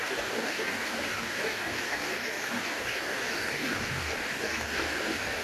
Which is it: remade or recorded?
remade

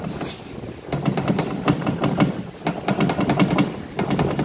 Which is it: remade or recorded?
recorded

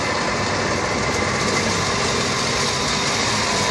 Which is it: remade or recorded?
recorded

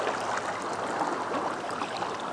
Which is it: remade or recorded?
recorded